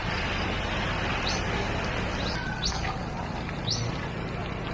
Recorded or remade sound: recorded